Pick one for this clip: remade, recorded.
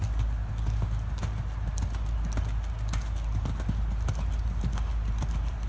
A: recorded